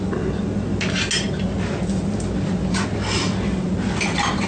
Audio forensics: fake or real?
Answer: real